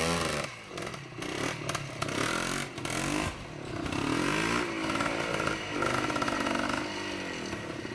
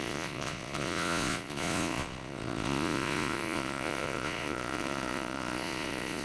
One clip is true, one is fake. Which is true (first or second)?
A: first